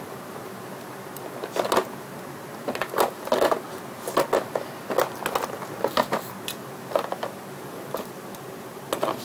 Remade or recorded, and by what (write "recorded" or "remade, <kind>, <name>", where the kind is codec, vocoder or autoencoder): recorded